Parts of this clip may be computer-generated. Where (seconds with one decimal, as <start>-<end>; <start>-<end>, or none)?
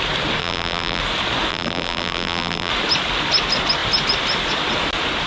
0.4-1.0; 1.5-2.7